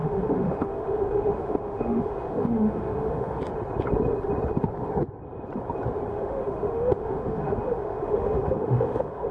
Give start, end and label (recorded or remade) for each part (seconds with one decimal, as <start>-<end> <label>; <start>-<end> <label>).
0.0-3.4 remade; 3.4-6.1 recorded; 6.1-9.3 remade